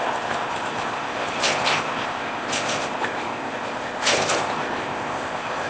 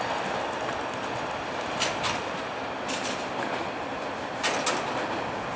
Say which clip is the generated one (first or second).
first